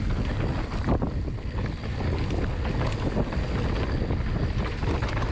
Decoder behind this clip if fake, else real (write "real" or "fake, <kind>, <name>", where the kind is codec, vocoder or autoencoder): real